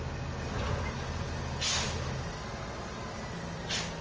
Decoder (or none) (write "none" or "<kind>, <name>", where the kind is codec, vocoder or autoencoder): none